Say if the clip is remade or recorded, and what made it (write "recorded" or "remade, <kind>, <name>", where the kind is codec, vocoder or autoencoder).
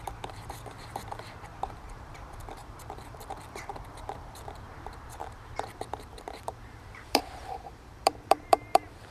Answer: remade, vocoder, BigVGAN v2